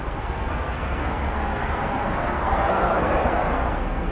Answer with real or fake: fake